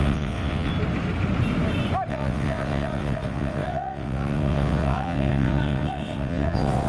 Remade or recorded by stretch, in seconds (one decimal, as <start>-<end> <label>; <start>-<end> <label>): 0.0-0.7 remade; 0.7-2.1 recorded; 2.1-6.9 remade